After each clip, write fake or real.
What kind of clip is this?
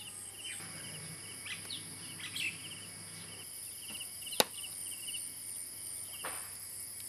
real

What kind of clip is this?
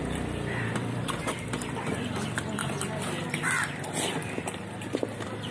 fake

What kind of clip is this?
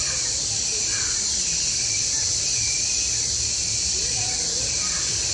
fake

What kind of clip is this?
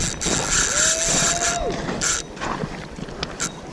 real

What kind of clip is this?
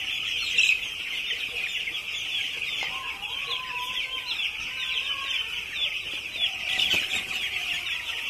real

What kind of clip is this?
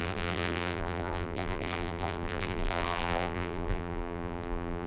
fake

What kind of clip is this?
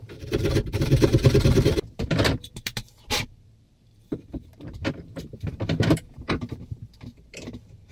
fake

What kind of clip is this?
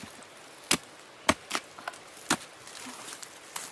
real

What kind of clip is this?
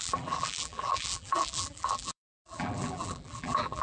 fake